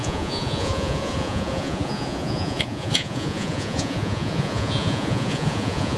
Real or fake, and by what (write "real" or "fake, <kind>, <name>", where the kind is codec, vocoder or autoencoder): fake, vocoder, Vocos